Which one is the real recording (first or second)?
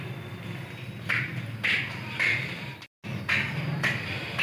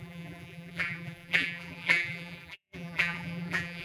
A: first